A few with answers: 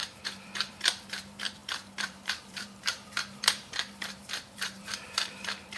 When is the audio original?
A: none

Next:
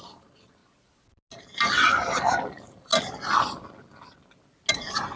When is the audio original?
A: 0.6-2.5; 2.9-4.7

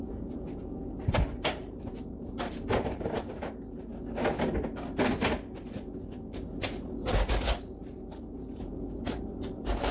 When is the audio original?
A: 0.6-1.1; 3.9-7.6